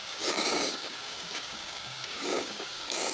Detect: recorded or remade remade